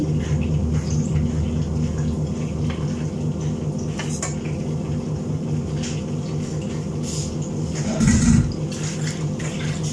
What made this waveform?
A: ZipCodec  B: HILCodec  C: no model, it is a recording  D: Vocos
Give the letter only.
C